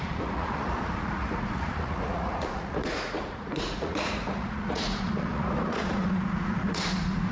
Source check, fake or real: fake